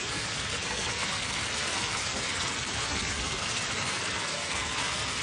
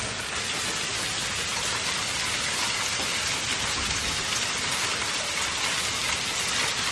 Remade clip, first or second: first